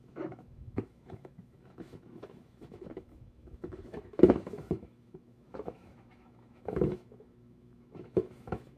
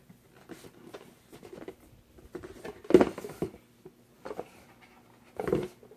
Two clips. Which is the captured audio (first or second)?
second